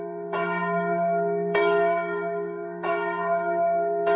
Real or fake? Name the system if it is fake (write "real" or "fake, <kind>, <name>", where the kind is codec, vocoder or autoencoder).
fake, codec, DAC